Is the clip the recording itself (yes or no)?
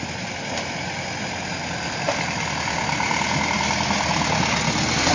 yes